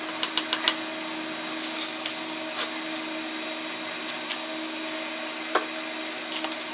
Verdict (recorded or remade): recorded